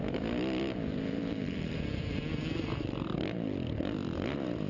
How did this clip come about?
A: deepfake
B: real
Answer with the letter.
A